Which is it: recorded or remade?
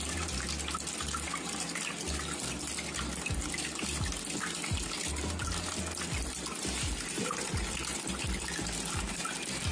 recorded